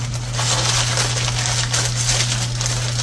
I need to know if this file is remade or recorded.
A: recorded